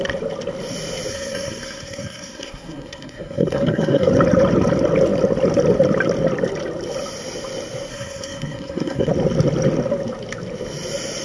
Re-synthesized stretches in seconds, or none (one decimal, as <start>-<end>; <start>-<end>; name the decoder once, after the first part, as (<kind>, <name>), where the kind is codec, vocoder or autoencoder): 1.1-4.1 (codec, SNAC); 7.9-9.1

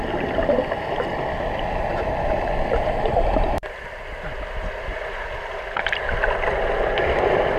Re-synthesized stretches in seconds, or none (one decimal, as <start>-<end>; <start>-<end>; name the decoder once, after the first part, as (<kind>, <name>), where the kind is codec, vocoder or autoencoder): none

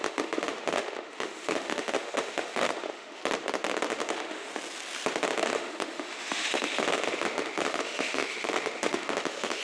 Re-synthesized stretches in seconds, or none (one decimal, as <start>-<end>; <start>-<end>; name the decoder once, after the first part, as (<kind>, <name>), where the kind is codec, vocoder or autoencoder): 0.0-3.2 (autoencoder, DAC-VAE); 3.9-4.5; 5.4-9.6

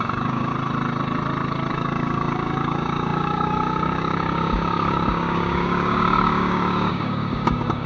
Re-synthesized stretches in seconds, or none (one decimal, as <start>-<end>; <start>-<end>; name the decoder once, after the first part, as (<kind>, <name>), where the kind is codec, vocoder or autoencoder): 0.0-0.5 (codec, DAC); 1.7-7.9

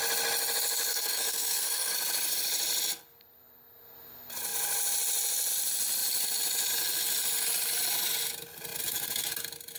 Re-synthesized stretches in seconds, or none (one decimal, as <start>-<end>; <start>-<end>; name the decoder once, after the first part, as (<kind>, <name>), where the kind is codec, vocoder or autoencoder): 0.9-1.9 (codec, SNAC)

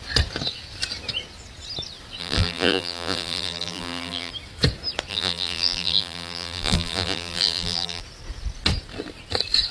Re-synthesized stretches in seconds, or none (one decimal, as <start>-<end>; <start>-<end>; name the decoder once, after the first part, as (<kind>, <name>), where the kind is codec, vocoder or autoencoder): 2.2-4.3 (vocoder, BigVGAN v2); 5.1-8.0